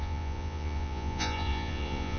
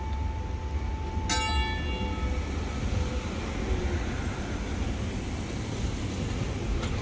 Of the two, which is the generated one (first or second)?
first